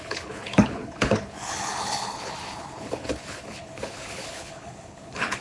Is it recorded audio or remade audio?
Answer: remade